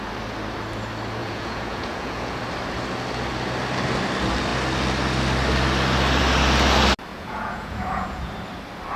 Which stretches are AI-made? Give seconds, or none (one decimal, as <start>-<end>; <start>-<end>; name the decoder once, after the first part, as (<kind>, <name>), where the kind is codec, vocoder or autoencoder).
1.2-2.4 (vocoder, Vocos); 7.1-8.3